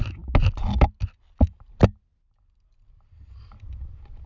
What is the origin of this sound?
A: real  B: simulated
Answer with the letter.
A